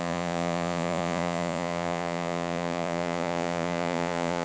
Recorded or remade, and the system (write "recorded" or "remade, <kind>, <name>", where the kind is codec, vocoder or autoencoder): remade, vocoder, Vocos